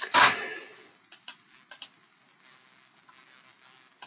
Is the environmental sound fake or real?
fake